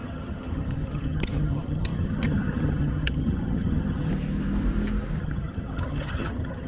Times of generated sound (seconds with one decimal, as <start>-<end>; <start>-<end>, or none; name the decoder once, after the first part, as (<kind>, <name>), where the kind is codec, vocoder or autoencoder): 0.0-4.1 (vocoder, HiFi-GAN); 5.2-6.7